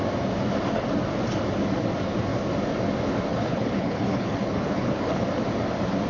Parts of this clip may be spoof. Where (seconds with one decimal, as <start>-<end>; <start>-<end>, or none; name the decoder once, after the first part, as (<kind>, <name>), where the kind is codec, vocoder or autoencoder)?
3.3-5.2 (codec, HILCodec)